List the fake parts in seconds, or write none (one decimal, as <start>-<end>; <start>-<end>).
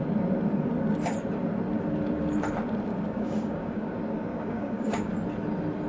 2.9-3.9; 4.3-5.1